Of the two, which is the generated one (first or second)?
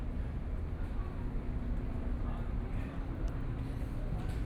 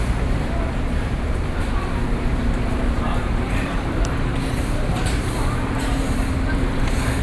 second